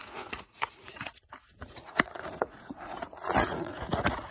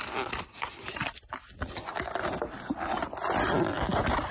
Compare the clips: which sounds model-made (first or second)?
first